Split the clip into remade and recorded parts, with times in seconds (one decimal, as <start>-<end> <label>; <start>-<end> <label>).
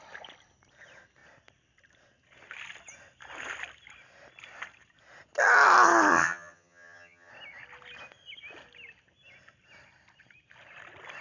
0.0-6.1 recorded; 6.1-7.3 remade; 7.3-11.2 recorded